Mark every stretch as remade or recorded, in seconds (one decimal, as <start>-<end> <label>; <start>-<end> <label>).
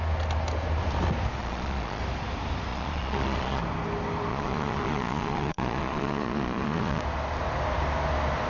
0.0-1.4 recorded; 1.4-2.0 remade; 2.0-2.7 recorded; 2.7-3.6 remade; 3.6-4.3 recorded; 4.3-7.0 remade; 7.0-8.5 recorded